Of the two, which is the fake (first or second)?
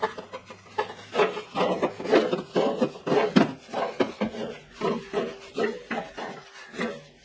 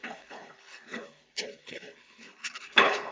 second